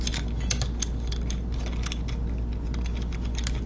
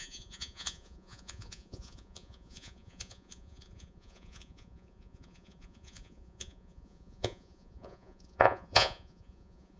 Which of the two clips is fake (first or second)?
second